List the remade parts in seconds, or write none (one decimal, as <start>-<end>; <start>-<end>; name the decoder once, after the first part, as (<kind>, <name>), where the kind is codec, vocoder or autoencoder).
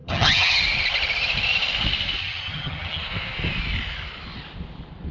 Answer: 0.0-0.6 (vocoder, HiFi-GAN); 2.2-3.0